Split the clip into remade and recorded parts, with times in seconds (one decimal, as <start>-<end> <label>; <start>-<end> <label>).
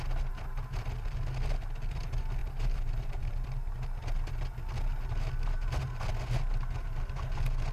0.0-2.4 recorded; 2.4-3.2 remade; 3.2-7.7 recorded